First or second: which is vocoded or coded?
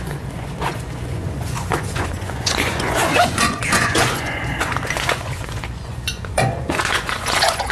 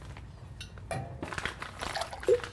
first